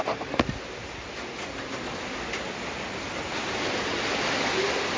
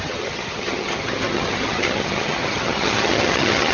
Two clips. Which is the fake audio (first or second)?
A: second